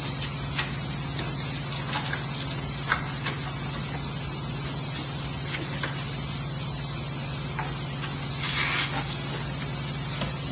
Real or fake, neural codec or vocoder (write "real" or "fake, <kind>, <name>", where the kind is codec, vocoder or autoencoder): real